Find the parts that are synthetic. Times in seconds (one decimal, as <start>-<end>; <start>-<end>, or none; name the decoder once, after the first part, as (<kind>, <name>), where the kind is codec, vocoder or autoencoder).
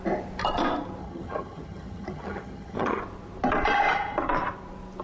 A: 1.0-3.0 (vocoder, HiFi-GAN)